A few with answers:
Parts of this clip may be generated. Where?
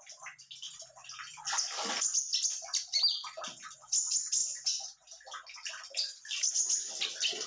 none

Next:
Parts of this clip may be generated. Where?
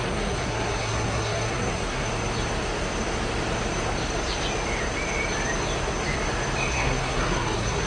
0.0-2.1 (codec, SNAC); 6.7-7.9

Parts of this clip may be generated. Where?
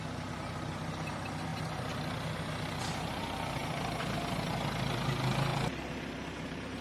5.5-6.8 (vocoder, BigVGAN v2)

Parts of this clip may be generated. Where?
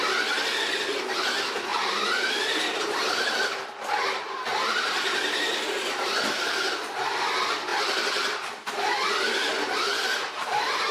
1.7-3.2 (vocoder, BigVGAN v2); 4.5-6.4; 10.0-10.9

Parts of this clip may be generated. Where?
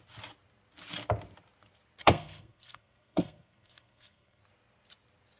2.0-4.4 (codec, SNAC)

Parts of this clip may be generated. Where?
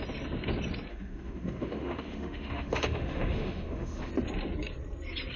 0.9-4.1 (autoencoder, DAC-VAE)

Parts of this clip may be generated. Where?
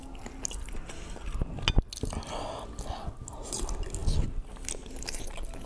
none